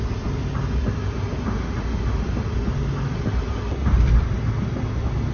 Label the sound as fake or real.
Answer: real